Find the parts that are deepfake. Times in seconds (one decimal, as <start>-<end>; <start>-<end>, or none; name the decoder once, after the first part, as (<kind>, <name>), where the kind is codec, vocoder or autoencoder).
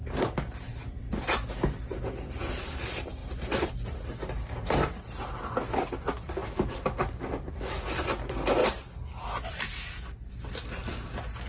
none